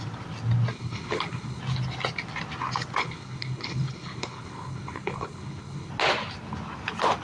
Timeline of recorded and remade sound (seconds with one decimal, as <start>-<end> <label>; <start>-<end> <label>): 0.0-0.7 recorded; 0.7-1.6 remade; 1.6-3.0 recorded; 3.0-5.9 remade; 5.9-7.2 recorded